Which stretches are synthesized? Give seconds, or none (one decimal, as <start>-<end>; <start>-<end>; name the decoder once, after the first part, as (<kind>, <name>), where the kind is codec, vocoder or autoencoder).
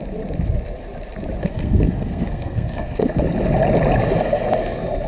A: 1.4-3.2 (codec, SNAC)